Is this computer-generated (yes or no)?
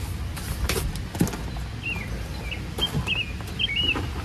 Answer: no